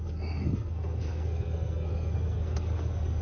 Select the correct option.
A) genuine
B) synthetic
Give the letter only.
B